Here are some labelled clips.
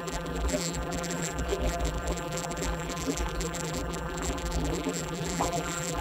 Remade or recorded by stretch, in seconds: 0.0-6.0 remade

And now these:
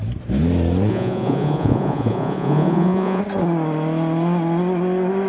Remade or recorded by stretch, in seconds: 0.0-0.9 recorded; 0.9-3.2 remade; 3.2-5.3 recorded